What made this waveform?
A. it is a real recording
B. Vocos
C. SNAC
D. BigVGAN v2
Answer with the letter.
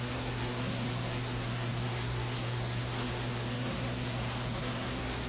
C